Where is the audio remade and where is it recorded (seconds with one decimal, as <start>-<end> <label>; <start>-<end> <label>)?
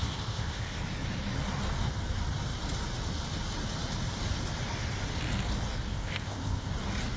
0.0-0.8 remade; 0.8-5.9 recorded; 5.9-6.7 remade; 6.7-7.2 recorded